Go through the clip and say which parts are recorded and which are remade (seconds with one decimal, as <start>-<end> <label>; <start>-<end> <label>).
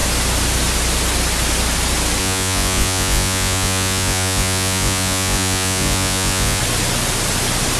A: 0.0-2.2 recorded; 2.2-6.6 remade; 6.6-7.8 recorded